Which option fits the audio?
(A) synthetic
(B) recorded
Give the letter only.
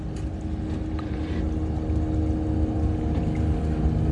B